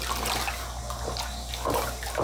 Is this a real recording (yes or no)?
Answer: yes